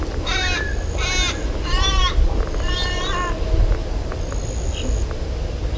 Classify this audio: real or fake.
real